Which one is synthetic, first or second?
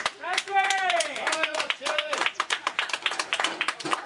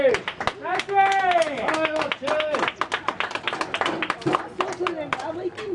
first